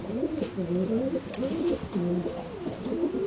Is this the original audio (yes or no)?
yes